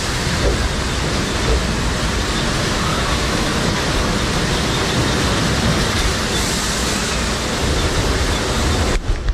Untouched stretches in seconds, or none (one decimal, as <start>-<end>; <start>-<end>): 0.0-2.9; 3.7-9.3